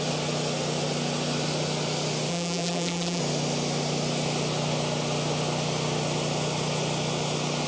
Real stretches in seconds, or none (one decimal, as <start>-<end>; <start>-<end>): 0.0-2.3; 3.2-7.7